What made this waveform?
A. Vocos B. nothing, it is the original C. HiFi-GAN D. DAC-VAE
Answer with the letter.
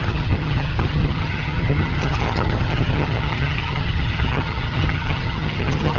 C